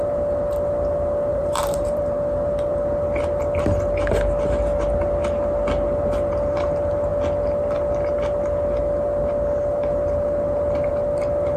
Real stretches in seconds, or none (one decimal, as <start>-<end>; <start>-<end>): 0.0-1.3; 2.0-11.6